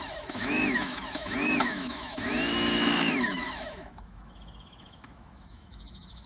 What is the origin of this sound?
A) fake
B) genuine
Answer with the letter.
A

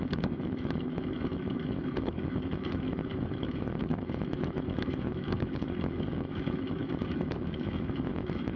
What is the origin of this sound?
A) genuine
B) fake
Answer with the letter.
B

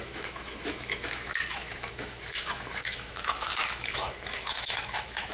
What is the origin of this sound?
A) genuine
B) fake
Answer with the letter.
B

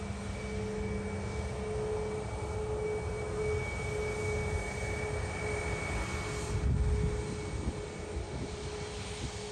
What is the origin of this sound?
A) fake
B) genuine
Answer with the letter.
B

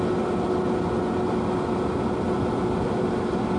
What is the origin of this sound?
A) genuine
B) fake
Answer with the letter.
A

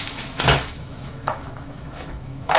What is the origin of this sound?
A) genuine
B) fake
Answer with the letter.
B